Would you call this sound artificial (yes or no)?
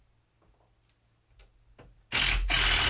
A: no